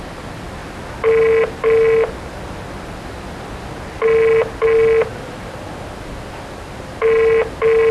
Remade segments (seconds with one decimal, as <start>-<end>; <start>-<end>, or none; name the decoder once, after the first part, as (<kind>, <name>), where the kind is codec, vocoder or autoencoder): none